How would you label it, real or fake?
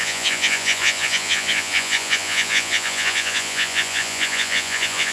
fake